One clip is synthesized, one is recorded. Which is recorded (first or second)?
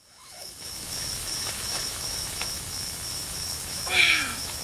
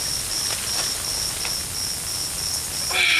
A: second